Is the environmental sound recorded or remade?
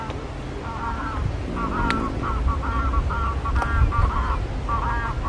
recorded